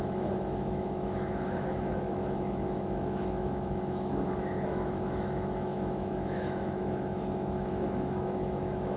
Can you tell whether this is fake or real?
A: fake